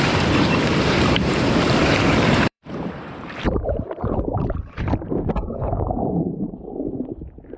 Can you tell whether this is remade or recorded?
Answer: remade